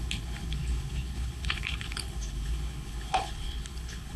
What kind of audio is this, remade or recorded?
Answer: remade